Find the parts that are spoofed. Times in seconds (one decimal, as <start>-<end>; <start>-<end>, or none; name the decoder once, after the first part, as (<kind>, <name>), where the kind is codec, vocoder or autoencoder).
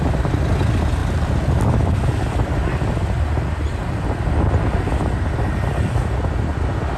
none